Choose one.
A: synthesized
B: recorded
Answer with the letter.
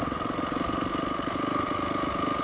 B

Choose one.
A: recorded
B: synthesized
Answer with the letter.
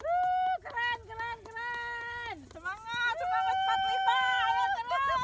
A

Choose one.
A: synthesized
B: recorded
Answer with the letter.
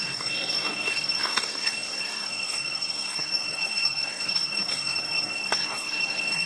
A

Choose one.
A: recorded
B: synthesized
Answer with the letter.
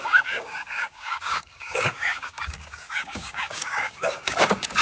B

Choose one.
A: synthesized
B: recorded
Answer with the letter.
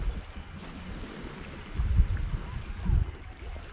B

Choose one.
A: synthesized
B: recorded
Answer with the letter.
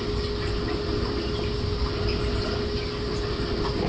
B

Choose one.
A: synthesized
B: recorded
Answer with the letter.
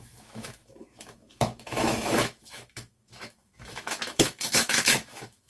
A